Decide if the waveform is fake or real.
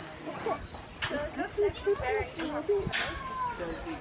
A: real